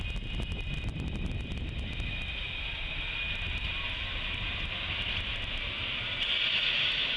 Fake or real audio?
real